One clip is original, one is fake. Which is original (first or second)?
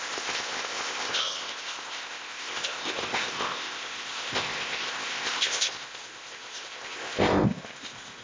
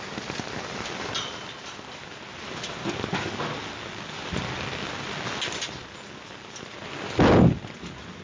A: second